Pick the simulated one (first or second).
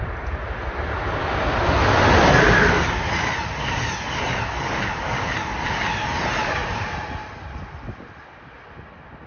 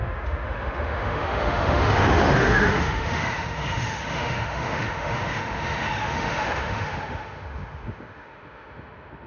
second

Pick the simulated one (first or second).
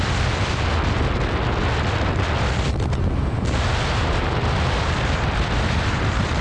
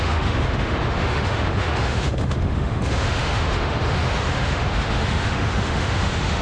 second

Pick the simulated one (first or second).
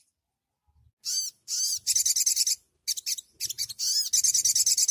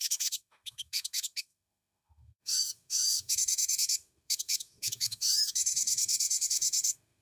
second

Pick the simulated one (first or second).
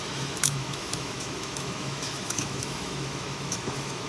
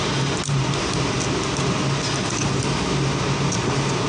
first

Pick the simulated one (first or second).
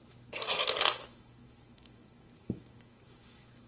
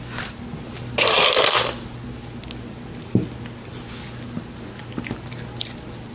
first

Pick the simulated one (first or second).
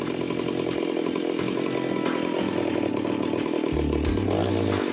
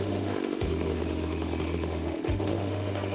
second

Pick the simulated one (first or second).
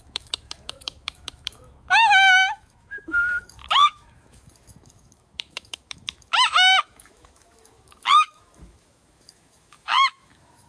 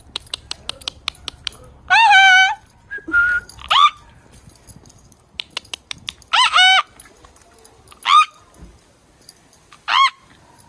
first